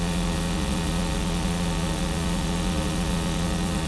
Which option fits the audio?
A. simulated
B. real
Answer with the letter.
A